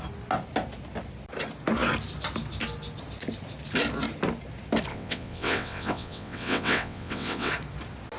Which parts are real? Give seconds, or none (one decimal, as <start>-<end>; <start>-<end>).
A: 0.0-4.9; 7.5-8.2